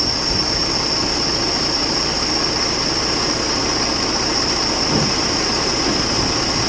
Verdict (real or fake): real